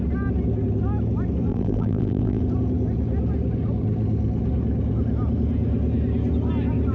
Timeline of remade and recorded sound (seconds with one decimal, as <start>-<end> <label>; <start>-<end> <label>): 0.0-1.5 recorded; 1.5-2.4 remade; 2.4-6.9 recorded